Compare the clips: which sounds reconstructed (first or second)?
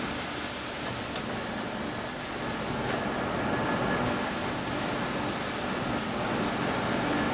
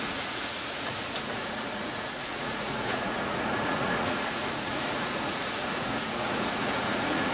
second